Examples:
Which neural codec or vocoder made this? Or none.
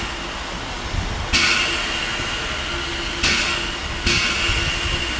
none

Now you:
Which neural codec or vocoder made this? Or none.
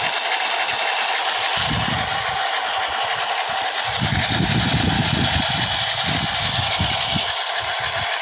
none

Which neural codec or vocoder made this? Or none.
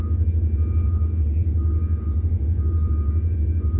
vocoder, Vocos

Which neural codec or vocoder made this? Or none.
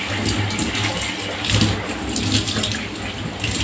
none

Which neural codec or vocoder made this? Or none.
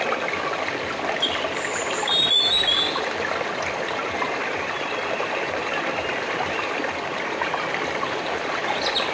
none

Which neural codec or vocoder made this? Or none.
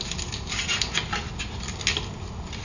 none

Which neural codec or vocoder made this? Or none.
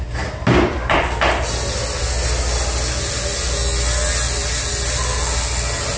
none